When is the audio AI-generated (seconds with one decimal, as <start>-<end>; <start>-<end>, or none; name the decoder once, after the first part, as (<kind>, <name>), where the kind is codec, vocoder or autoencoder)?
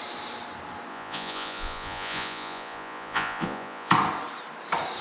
0.9-3.9 (vocoder, Vocos)